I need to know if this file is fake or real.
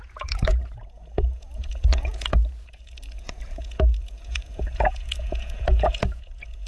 fake